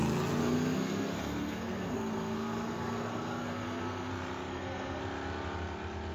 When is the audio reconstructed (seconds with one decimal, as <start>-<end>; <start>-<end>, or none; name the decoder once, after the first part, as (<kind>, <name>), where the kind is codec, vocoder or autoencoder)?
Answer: 0.4-4.1 (codec, SNAC); 4.5-5.0